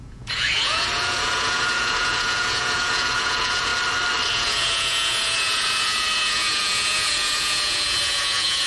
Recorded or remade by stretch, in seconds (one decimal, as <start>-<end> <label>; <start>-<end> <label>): 0.0-3.7 remade; 3.7-4.3 recorded; 4.3-8.7 remade